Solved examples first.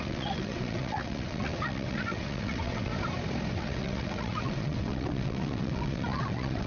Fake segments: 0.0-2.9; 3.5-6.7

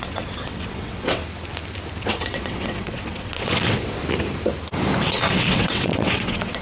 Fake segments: 0.0-1.2; 2.0-4.0; 5.0-6.6

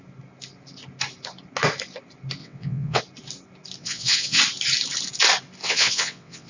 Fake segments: 2.4-3.0; 3.8-4.4; 5.6-6.5

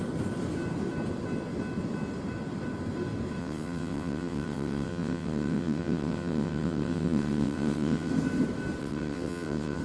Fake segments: 3.4-8.1; 8.8-9.8